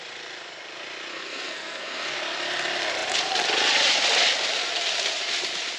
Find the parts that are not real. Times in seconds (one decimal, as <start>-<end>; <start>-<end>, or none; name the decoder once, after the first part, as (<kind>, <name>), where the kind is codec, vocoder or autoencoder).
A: 1.1-2.2 (codec, SNAC)